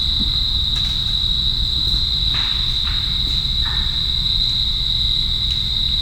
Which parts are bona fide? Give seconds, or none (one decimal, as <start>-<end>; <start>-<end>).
0.0-6.0